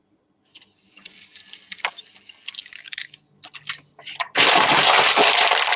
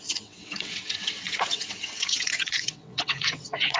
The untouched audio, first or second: first